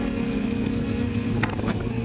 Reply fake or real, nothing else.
fake